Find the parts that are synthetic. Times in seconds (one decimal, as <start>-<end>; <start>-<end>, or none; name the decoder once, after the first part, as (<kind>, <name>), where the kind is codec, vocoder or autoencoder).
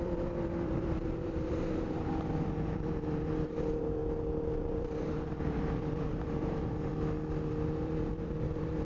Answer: 0.0-4.0 (vocoder, BigVGAN v2); 4.6-6.9; 7.5-8.8